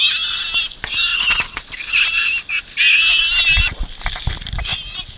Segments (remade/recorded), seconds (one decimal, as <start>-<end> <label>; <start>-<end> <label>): 0.0-4.7 recorded; 4.7-5.2 remade